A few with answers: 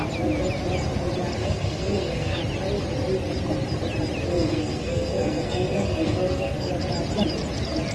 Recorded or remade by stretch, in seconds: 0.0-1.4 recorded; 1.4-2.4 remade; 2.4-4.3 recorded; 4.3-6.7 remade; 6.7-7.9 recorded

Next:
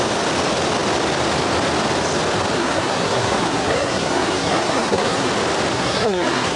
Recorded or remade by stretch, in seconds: 0.0-2.6 recorded; 2.6-5.3 remade; 5.3-5.7 recorded; 5.7-6.6 remade

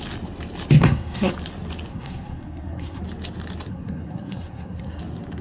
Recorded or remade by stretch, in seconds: 0.0-0.8 recorded; 0.8-1.3 remade; 1.3-1.9 recorded; 1.9-3.0 remade; 3.0-3.7 recorded; 3.7-5.0 remade; 5.0-5.4 recorded

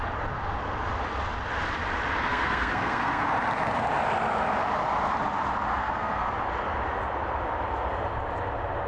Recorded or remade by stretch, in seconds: 0.0-2.3 recorded; 2.3-3.2 remade; 3.2-5.8 recorded; 5.8-6.3 remade; 6.3-8.9 recorded